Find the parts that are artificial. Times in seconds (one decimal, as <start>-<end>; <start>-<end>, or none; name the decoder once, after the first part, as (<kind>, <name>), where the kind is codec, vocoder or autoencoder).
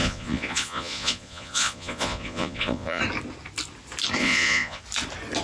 0.0-3.0 (vocoder, Vocos); 4.2-4.8